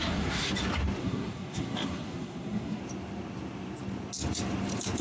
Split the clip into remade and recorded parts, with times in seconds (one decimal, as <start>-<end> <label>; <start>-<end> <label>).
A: 0.0-0.5 remade; 0.5-1.0 recorded; 1.0-2.8 remade; 2.8-5.0 recorded